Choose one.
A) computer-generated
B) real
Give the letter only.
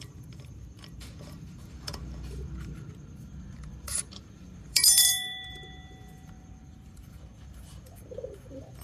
A